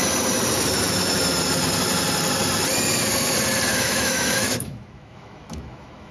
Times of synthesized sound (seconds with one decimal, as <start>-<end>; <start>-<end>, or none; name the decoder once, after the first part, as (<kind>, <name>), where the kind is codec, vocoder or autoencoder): 3.7-6.1 (autoencoder, DAC-VAE)